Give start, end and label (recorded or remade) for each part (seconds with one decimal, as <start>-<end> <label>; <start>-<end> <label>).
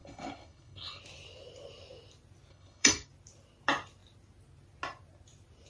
0.0-1.0 remade; 1.0-2.5 recorded; 2.5-3.1 remade; 3.1-5.7 recorded